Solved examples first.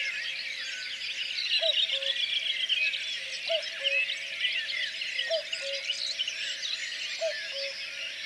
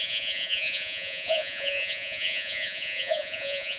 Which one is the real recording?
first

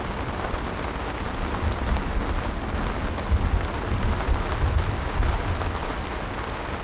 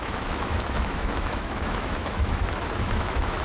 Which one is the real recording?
first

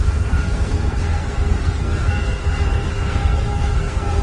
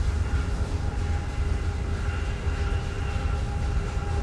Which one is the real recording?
second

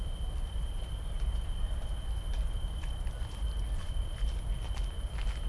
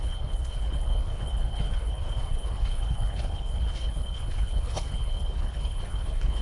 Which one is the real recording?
first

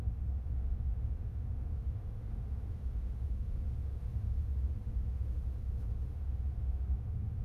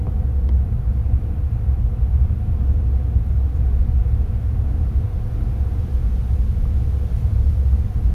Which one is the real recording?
second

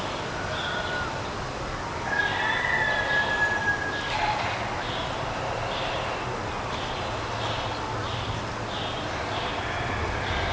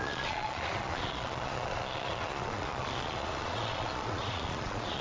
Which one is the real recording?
first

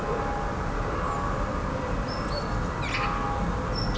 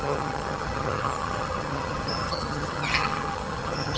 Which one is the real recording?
first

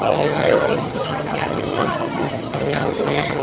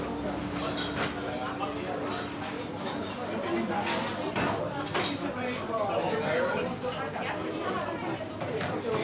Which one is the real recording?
second